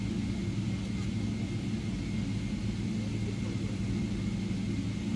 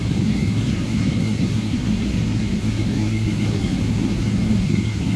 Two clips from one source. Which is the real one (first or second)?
first